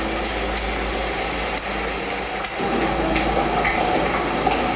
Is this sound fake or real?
real